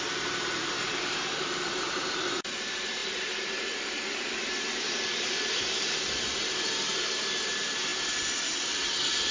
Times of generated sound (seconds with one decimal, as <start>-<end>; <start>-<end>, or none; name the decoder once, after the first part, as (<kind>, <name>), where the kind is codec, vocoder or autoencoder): 0.0-9.3 (vocoder, BigVGAN v2)